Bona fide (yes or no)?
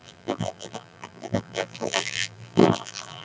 no